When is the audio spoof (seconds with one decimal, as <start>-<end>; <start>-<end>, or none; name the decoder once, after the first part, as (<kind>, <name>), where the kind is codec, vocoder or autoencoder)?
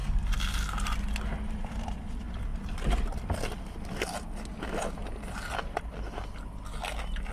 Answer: 5.0-5.9 (vocoder, BigVGAN v2)